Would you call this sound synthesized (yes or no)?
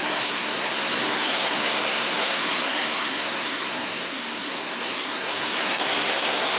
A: yes